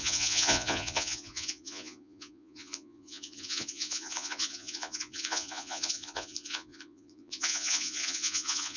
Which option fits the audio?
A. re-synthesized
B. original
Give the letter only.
A